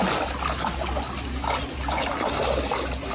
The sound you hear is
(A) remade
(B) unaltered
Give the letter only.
B